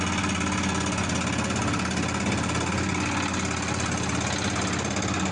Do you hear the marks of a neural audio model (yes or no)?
no